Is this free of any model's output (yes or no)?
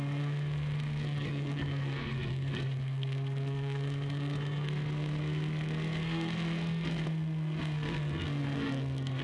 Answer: no